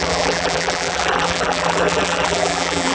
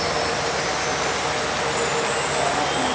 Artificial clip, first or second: first